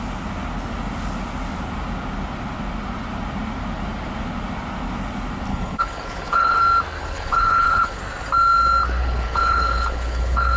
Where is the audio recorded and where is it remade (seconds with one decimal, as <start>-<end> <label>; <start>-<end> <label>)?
0.0-5.5 recorded; 5.5-6.6 remade; 6.6-7.0 recorded; 7.0-8.0 remade; 8.0-9.0 recorded; 9.0-10.6 remade